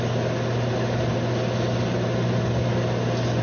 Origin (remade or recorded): recorded